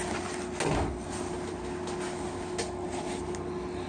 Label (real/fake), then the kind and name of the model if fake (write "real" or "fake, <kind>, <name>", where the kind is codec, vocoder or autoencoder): real